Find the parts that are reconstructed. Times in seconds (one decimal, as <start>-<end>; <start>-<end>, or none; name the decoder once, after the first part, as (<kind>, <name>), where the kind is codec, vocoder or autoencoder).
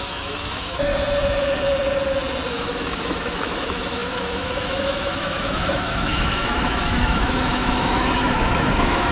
0.0-0.9 (autoencoder, DAC-VAE); 2.5-9.1